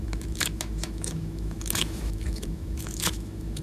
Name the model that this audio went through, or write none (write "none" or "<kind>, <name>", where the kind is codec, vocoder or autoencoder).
autoencoder, DAC-VAE